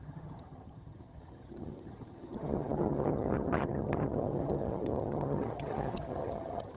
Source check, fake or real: fake